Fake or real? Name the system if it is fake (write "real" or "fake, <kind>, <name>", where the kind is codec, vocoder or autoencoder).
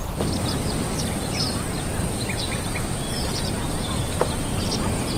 real